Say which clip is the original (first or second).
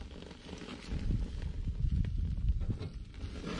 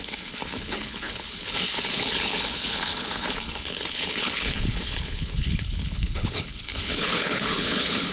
first